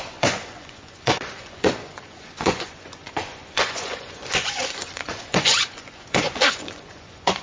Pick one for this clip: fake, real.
fake